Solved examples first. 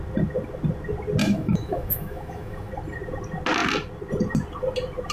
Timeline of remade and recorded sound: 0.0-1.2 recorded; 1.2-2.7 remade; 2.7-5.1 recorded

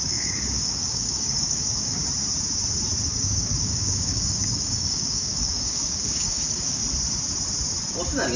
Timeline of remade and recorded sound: 0.0-2.0 remade; 2.0-3.1 recorded; 3.1-6.8 remade; 6.8-8.4 recorded

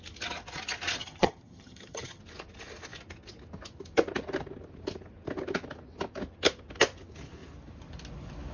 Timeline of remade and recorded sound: 0.0-1.0 recorded; 1.0-2.2 remade; 2.2-8.5 recorded

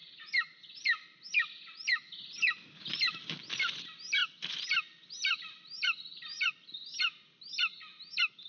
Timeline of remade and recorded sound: 0.0-8.5 recorded